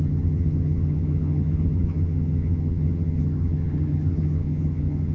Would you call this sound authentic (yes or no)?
no